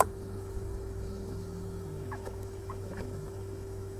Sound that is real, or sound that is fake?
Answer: fake